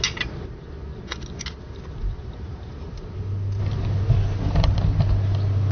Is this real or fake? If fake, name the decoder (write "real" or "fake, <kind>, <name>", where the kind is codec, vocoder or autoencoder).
real